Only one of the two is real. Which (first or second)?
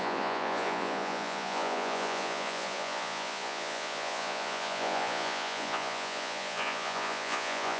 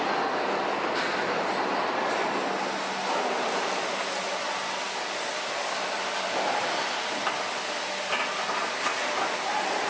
second